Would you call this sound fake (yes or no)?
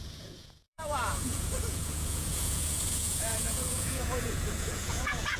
yes